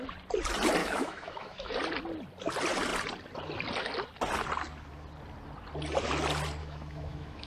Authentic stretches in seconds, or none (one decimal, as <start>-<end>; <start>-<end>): 0.0-0.8; 1.7-6.6